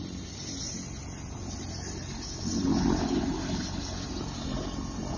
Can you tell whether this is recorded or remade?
remade